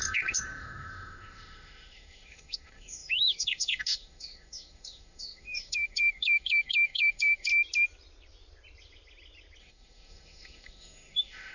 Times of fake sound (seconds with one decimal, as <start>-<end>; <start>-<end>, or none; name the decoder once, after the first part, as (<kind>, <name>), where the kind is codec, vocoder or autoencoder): 0.0-7.5 (autoencoder, DAC-VAE); 9.6-11.5